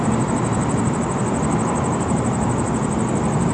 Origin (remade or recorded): remade